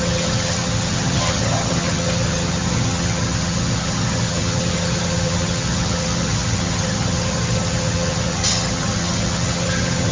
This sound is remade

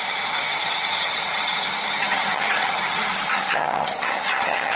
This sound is remade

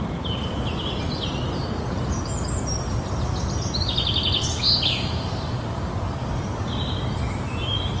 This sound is recorded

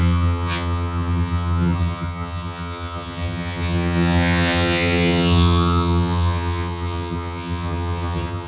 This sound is remade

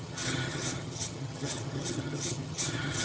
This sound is remade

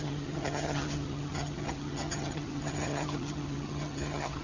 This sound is remade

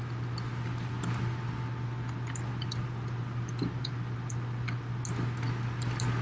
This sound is recorded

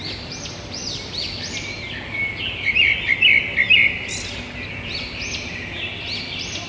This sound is recorded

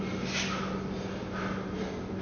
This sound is recorded